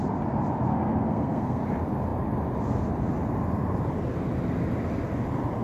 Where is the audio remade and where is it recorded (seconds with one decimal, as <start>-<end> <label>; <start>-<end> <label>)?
0.0-0.7 recorded; 0.7-1.6 remade; 1.6-5.6 recorded